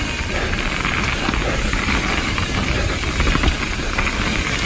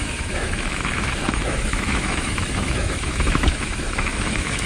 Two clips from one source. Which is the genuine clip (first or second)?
first